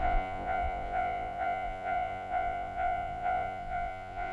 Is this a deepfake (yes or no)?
yes